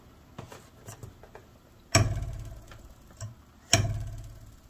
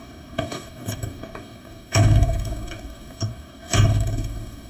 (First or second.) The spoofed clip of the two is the second